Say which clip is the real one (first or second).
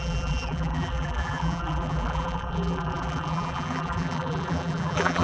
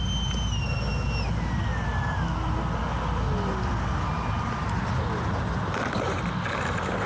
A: second